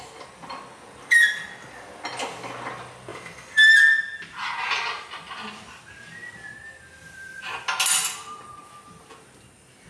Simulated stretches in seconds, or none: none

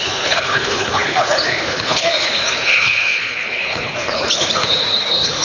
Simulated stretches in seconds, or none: 0.0-5.4 (codec, HILCodec)

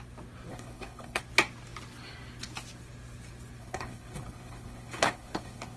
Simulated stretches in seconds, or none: 0.5-1.2 (codec, HILCodec); 3.6-5.8

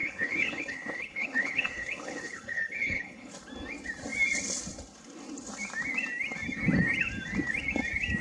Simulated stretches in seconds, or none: 0.0-3.3 (codec, HILCodec)